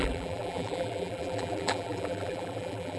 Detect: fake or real fake